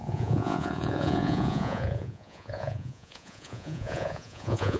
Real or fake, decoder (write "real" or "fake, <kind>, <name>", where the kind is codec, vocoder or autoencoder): fake, vocoder, Vocos